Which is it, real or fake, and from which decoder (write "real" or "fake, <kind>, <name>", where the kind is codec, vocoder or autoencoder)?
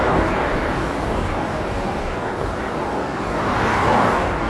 fake, codec, DAC